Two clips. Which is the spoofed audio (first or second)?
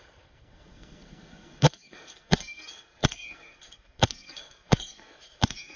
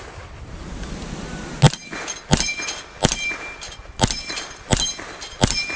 first